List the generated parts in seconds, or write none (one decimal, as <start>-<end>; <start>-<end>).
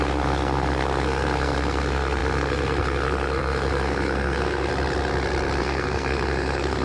0.0-4.7; 5.6-6.8